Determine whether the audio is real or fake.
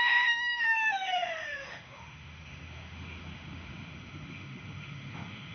fake